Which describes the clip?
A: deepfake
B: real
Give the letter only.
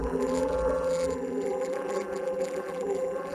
A